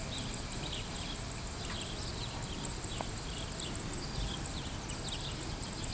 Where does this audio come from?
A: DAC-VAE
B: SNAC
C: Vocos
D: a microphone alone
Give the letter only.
D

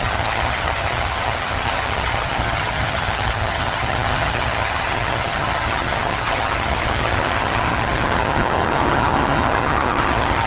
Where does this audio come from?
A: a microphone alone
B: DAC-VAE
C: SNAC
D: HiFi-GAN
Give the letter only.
D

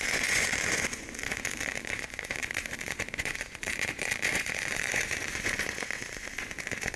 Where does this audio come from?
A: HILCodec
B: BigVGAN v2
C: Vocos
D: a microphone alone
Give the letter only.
C